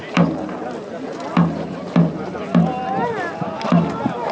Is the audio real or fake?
real